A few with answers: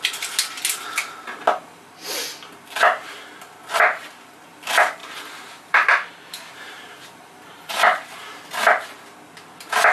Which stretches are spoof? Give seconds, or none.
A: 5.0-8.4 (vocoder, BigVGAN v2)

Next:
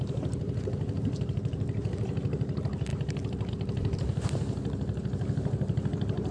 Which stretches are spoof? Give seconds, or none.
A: none